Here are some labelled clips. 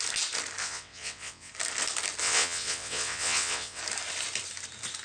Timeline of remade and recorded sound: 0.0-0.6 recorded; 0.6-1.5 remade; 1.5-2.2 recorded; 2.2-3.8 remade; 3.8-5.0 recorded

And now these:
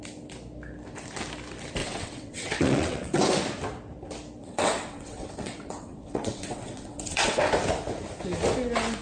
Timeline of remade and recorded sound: 0.0-1.8 recorded; 1.8-3.2 remade; 3.2-4.4 recorded; 4.4-7.4 remade; 7.4-9.0 recorded

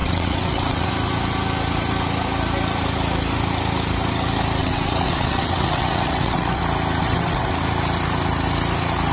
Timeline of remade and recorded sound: 0.0-0.9 remade; 0.9-4.6 recorded; 4.6-6.6 remade; 6.6-7.0 recorded; 7.0-7.5 remade; 7.5-9.1 recorded

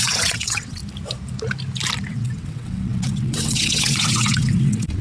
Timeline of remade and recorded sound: 0.0-0.8 remade; 0.8-2.1 recorded; 2.1-5.0 remade

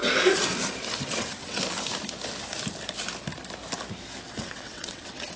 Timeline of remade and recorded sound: 0.0-1.0 recorded; 1.0-1.6 remade; 1.6-4.3 recorded; 4.3-5.4 remade

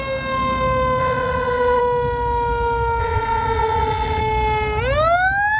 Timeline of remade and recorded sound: 0.0-1.0 recorded; 1.0-1.8 remade; 1.8-3.0 recorded; 3.0-4.2 remade; 4.2-5.6 recorded

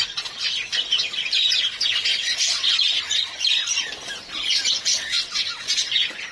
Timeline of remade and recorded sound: 0.0-2.1 recorded; 2.1-2.7 remade; 2.7-4.9 recorded; 4.9-5.7 remade; 5.7-6.3 recorded

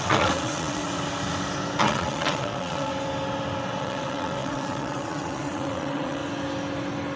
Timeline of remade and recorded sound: 0.0-0.8 remade; 0.8-1.8 recorded; 1.8-2.9 remade; 2.9-3.8 recorded; 3.8-6.2 remade; 6.2-7.2 recorded